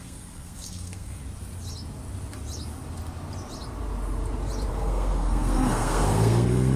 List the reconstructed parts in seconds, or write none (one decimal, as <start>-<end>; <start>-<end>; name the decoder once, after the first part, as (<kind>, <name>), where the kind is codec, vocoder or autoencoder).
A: 0.0-1.2 (codec, SNAC); 4.7-6.8